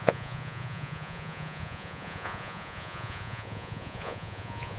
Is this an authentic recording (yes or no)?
no